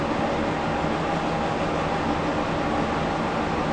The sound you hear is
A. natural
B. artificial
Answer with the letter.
A